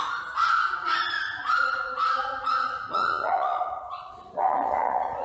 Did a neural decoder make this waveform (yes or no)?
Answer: yes